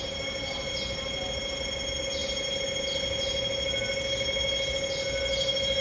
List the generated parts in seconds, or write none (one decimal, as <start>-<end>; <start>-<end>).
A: none